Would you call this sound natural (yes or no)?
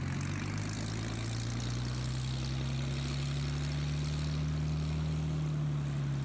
yes